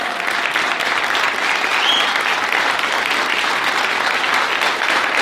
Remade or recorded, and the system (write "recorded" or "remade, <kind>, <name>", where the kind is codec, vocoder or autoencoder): recorded